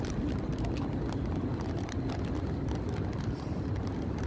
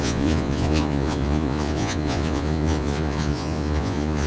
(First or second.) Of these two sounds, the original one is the first